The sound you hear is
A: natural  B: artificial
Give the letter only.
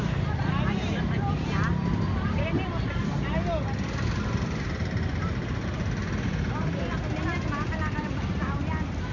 A